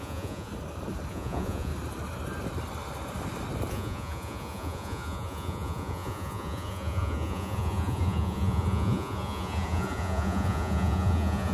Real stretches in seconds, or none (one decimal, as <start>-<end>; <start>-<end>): 0.5-1.1; 1.7-3.7